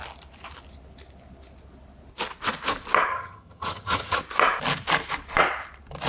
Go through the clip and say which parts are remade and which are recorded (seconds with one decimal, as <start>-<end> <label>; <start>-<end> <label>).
0.0-3.1 recorded; 3.1-4.2 remade; 4.2-6.1 recorded